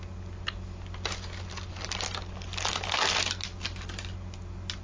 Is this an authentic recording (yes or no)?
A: yes